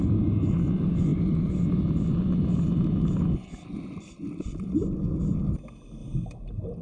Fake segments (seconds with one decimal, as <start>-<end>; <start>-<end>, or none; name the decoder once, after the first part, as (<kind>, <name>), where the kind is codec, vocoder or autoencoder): none